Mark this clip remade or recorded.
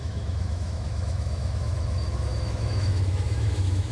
remade